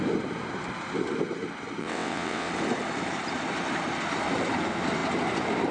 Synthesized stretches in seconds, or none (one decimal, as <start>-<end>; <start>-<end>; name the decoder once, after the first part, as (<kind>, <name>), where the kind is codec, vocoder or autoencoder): 1.8-2.5 (vocoder, WaveNeXt)